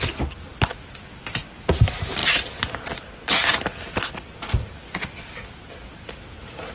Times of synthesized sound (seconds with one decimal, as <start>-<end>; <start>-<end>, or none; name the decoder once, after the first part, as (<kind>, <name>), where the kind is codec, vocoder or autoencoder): none